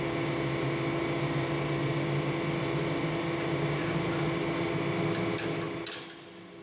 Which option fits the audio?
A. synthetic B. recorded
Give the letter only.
B